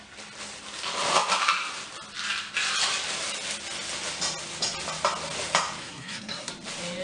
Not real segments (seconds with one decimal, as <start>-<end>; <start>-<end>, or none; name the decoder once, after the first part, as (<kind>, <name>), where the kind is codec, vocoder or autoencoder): 5.8-6.5 (codec, SNAC)